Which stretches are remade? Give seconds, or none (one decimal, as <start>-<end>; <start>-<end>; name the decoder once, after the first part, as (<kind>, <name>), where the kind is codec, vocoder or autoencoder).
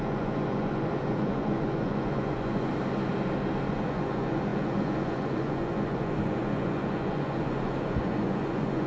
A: 0.0-2.7 (vocoder, Vocos); 3.7-8.9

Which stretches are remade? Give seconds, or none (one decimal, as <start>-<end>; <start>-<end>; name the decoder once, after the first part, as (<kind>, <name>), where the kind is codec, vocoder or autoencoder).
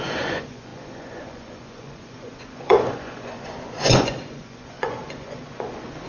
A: 0.0-6.1 (vocoder, Vocos)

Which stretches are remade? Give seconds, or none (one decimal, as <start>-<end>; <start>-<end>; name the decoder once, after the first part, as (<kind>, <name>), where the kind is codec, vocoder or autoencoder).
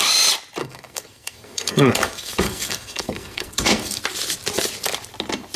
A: 0.6-4.0 (codec, SNAC)